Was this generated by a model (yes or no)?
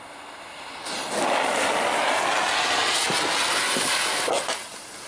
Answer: no